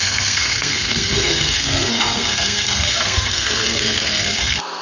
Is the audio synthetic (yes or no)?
yes